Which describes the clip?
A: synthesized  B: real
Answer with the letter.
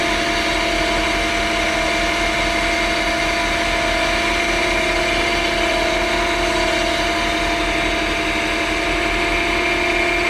B